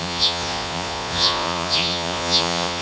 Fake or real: fake